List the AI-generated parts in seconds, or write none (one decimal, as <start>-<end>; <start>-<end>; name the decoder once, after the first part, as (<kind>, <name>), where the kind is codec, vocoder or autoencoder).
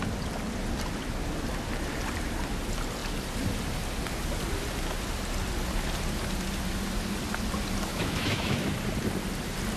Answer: 7.9-8.7 (autoencoder, DAC-VAE)